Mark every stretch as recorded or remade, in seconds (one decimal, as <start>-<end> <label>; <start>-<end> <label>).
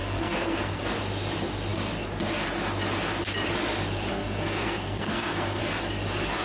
0.0-0.8 remade; 0.8-4.1 recorded; 4.1-5.6 remade; 5.6-6.4 recorded